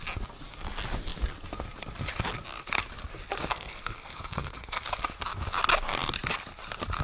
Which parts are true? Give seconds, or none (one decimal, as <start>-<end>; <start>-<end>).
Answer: 0.0-3.5; 4.8-7.0